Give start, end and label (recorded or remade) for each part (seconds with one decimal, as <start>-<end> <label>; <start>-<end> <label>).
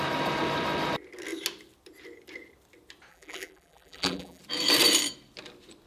0.0-3.1 recorded; 3.1-4.4 remade; 4.4-5.9 recorded